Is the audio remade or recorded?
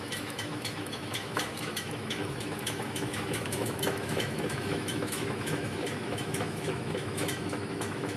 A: remade